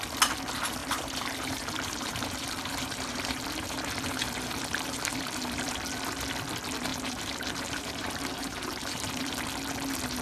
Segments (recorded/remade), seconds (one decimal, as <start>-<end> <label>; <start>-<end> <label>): 0.0-0.8 recorded; 0.8-5.7 remade; 5.7-6.9 recorded; 6.9-9.1 remade; 9.1-10.2 recorded